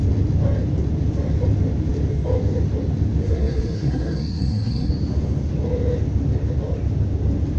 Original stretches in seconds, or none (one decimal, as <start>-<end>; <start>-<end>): 0.0-3.2; 4.9-7.6